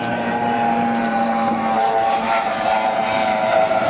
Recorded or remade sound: remade